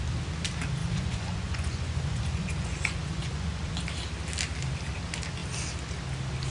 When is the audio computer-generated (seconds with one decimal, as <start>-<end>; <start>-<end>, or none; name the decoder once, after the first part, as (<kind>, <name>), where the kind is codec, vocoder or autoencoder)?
0.8-3.7 (vocoder, Vocos)